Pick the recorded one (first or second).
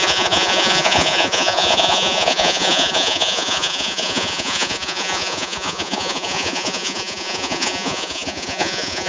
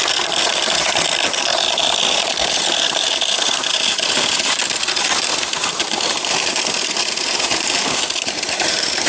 second